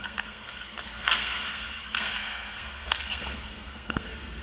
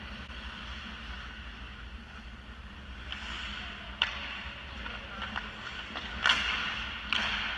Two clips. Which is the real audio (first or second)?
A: second